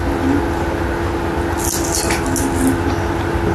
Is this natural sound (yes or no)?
yes